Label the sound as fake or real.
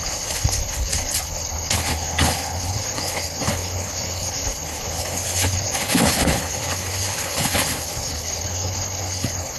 fake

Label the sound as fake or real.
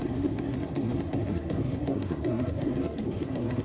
fake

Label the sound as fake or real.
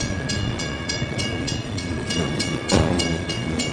fake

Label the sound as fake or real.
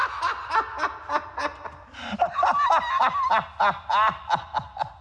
real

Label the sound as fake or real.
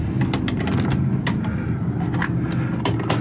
real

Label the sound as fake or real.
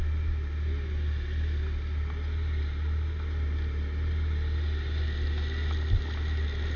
real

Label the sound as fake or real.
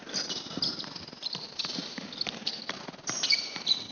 real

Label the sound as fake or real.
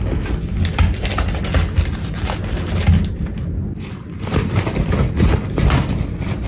real